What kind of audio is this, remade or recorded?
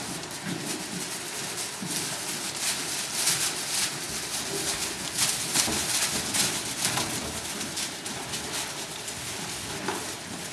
recorded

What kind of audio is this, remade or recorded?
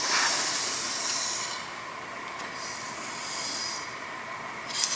recorded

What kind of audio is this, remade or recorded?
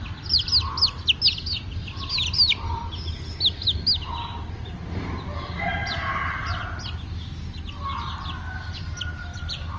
recorded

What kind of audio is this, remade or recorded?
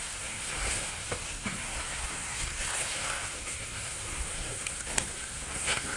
remade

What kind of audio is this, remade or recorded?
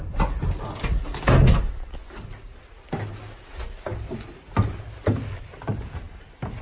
recorded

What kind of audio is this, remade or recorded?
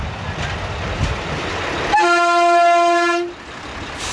recorded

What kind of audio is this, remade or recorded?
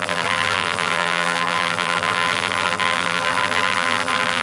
remade